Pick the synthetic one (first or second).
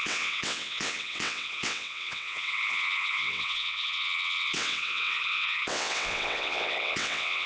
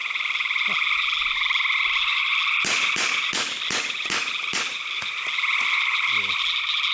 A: first